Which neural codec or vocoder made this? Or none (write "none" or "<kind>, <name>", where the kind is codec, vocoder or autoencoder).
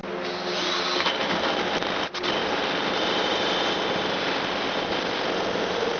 none